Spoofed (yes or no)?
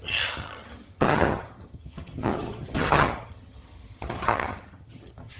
yes